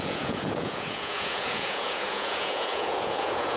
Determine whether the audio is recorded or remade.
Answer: remade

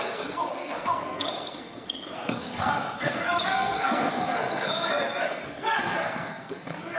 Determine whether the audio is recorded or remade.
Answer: remade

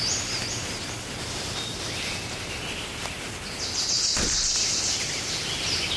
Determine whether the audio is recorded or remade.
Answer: recorded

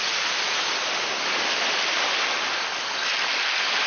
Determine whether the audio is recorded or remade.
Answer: recorded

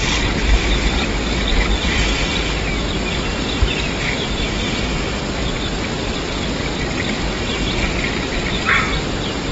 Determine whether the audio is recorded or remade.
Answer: recorded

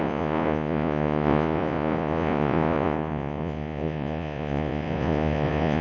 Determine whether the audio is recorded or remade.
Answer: remade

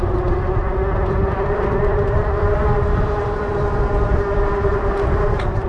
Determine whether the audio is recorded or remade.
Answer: recorded